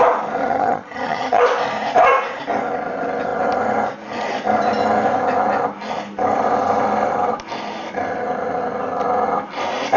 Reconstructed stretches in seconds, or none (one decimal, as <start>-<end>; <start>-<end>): 0.4-1.4